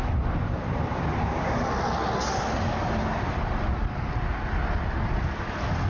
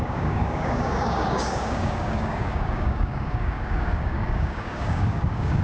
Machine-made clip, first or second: second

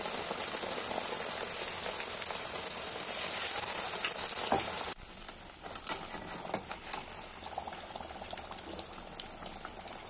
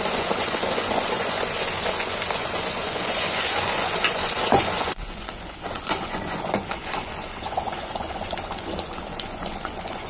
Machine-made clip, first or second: second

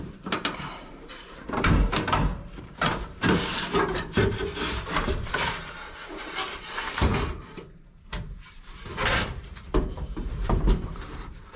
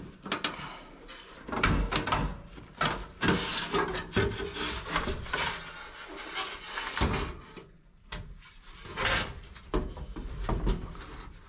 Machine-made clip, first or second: first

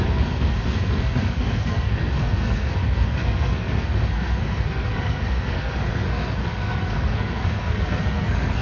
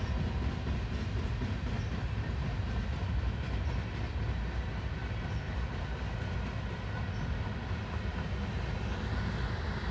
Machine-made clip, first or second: first